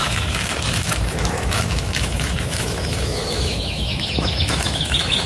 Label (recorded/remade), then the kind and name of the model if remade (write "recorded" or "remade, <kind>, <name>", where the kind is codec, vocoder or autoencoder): remade, autoencoder, DAC-VAE